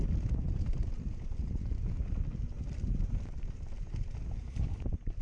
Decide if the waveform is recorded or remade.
recorded